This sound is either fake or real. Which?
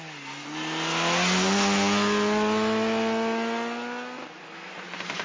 real